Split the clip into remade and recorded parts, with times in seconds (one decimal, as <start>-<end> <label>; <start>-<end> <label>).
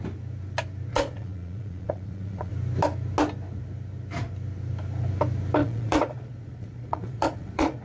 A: 0.0-0.9 recorded; 0.9-2.5 remade; 2.5-5.6 recorded; 5.6-7.8 remade